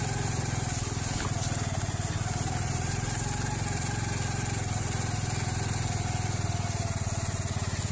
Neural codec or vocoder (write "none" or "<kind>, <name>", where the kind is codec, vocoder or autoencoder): none